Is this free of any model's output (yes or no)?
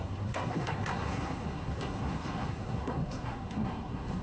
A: no